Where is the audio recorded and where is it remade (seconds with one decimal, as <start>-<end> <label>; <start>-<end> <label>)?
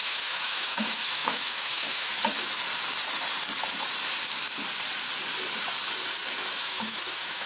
0.0-2.1 remade; 2.1-6.6 recorded; 6.6-7.5 remade